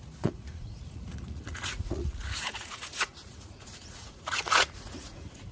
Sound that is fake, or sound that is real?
fake